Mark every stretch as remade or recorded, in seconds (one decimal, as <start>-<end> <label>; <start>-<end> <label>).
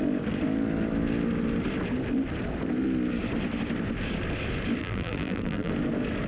0.0-4.8 recorded; 4.8-5.7 remade; 5.7-6.3 recorded